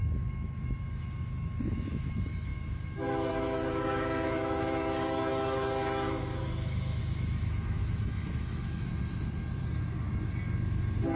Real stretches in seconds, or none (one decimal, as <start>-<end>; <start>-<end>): 8.9-11.2